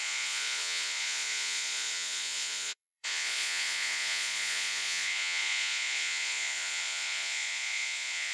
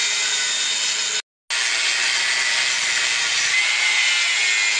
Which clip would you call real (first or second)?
second